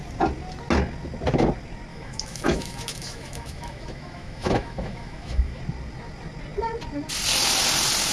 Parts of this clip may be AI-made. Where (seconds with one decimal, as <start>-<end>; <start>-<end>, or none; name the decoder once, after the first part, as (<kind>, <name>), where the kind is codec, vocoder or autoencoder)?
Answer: 1.9-5.6 (autoencoder, DAC-VAE)